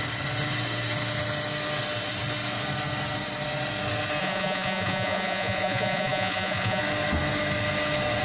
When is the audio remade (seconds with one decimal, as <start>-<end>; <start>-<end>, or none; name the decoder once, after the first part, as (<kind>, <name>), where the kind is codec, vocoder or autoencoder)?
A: 4.2-6.8 (vocoder, Vocos)

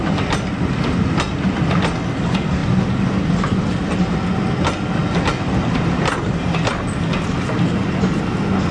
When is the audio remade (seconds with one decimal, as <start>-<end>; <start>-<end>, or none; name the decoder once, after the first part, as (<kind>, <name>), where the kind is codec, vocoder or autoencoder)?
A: none

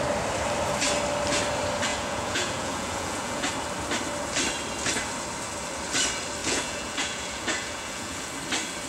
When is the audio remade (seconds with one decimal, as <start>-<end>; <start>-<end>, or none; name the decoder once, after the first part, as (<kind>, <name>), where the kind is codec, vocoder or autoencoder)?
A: 1.9-3.5 (vocoder, Vocos); 6.4-8.3

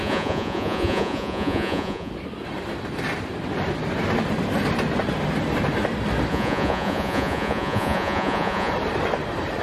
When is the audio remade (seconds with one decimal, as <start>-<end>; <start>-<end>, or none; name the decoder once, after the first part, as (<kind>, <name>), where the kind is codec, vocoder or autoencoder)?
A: 0.0-2.1 (vocoder, Vocos); 6.3-8.7

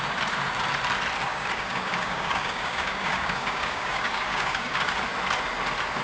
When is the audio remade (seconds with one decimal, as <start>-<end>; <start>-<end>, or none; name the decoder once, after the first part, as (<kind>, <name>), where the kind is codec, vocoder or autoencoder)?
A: 1.3-4.9 (codec, DAC)